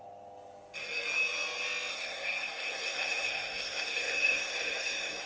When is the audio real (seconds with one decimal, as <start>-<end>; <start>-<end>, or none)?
0.0-1.9